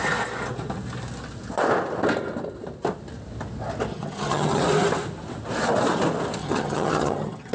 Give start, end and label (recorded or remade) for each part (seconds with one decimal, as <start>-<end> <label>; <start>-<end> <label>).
0.0-3.9 recorded; 3.9-4.6 remade; 4.6-6.4 recorded; 6.4-7.5 remade